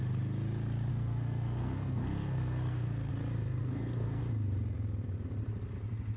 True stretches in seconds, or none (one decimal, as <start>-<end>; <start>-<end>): 0.0-0.9; 3.1-3.6; 4.2-6.2

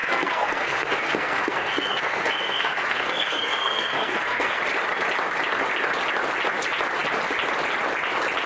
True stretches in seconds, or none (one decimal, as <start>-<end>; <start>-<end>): 4.6-8.5

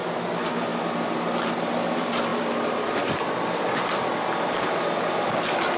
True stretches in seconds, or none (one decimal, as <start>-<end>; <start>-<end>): 0.0-5.8

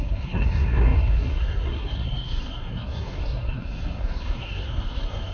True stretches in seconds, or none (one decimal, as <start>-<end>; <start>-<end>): none